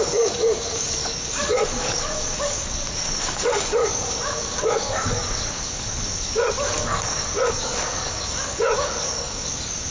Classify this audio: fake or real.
fake